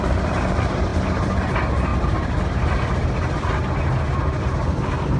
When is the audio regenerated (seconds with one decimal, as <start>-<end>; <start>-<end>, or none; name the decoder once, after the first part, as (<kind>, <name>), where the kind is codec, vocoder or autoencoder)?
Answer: none